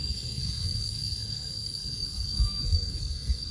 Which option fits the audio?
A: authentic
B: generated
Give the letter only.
B